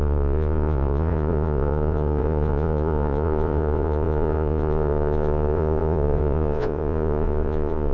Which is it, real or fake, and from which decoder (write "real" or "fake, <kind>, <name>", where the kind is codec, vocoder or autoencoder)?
fake, vocoder, Vocos